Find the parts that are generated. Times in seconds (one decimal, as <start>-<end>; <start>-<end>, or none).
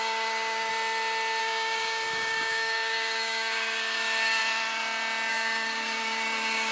0.0-0.7; 1.4-4.4; 5.3-6.7